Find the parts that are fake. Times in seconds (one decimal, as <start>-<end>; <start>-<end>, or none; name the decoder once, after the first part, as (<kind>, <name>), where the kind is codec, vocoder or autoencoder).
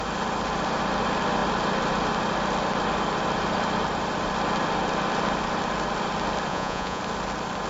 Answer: 6.5-7.0 (vocoder, Vocos)